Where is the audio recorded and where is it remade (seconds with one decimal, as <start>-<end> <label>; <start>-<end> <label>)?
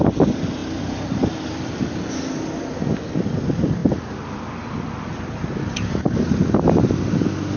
0.0-0.6 recorded; 0.6-1.2 remade; 1.2-3.8 recorded; 3.8-7.1 remade; 7.1-7.6 recorded